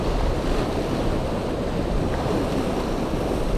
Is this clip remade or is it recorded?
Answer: recorded